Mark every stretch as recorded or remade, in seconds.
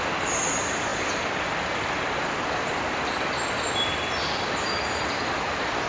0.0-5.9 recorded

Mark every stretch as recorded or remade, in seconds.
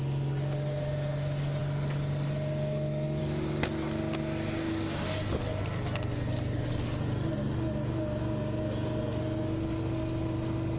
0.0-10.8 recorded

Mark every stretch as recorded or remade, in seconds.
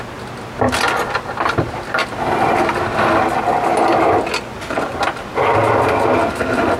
0.0-5.3 recorded; 5.3-6.8 remade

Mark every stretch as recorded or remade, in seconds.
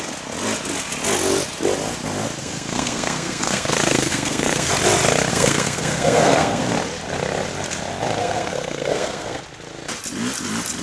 0.0-2.4 recorded; 2.4-4.7 remade; 4.7-5.3 recorded; 5.3-6.7 remade; 6.7-8.2 recorded; 8.2-9.4 remade; 9.4-10.8 recorded